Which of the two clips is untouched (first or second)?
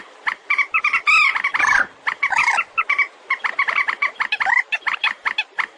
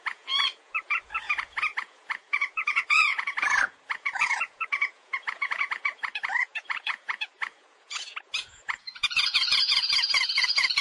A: first